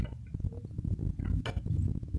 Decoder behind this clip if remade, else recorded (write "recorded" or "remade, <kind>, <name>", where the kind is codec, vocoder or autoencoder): recorded